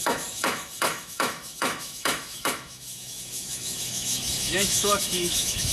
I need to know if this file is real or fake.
fake